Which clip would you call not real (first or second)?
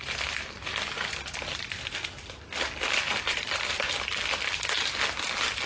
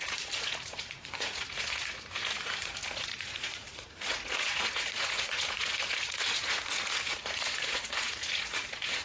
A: second